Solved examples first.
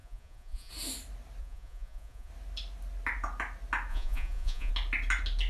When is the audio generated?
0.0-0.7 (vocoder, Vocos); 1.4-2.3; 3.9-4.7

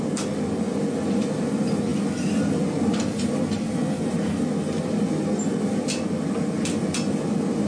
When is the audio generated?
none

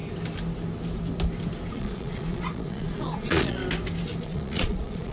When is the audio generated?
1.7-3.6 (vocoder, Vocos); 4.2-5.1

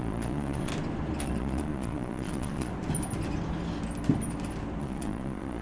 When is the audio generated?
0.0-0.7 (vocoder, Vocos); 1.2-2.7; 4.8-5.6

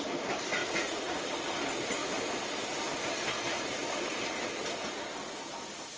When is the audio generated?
0.6-1.4 (vocoder, Vocos)

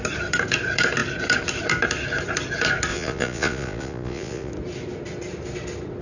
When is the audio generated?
2.9-4.5 (vocoder, Vocos)

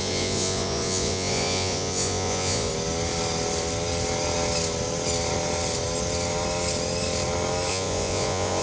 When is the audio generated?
0.0-2.7 (vocoder, Vocos); 7.7-8.6

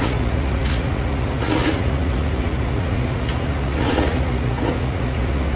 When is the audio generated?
0.0-5.6 (vocoder, Vocos)